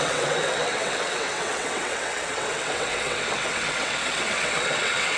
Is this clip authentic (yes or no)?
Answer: no